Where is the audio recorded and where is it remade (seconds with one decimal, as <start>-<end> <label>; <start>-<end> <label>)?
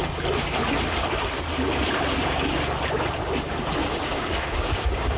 0.0-3.8 recorded; 3.8-5.2 remade